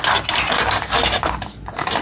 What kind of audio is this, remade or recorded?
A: recorded